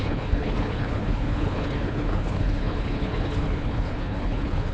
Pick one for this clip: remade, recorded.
remade